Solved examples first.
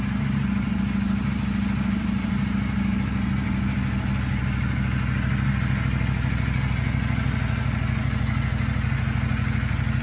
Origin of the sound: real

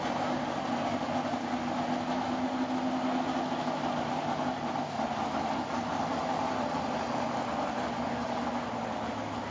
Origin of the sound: real